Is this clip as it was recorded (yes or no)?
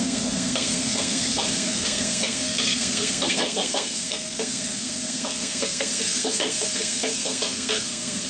no